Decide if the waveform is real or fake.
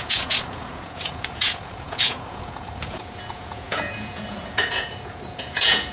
fake